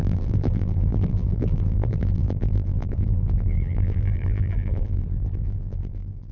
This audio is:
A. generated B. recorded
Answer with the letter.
A